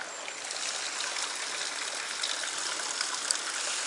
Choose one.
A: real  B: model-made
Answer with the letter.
A